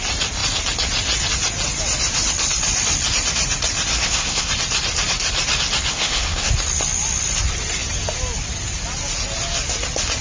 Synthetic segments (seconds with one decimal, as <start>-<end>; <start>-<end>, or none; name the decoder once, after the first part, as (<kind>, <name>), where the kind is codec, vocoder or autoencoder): 3.9-4.5 (codec, SNAC); 5.9-6.5